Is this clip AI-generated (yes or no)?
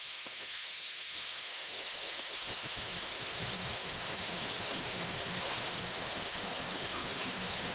yes